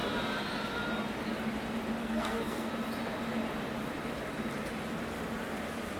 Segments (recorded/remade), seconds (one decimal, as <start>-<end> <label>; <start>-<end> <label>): 0.0-2.0 recorded; 2.0-2.7 remade; 2.7-6.0 recorded